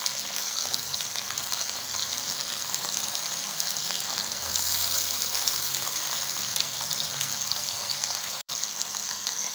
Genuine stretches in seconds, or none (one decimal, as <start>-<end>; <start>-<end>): none